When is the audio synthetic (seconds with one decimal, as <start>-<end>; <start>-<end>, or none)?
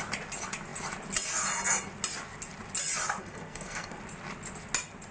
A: 3.2-4.0